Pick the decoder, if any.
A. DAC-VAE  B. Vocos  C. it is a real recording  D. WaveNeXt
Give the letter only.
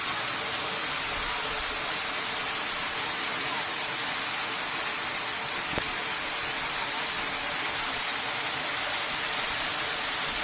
C